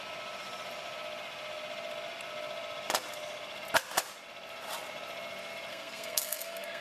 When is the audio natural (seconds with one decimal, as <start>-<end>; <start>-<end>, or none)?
0.0-5.7